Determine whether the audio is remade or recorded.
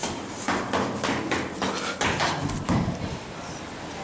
recorded